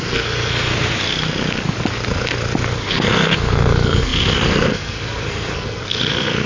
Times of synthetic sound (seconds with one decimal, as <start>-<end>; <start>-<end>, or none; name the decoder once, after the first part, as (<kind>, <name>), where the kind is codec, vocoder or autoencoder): 0.0-0.7 (codec, SNAC); 2.9-6.5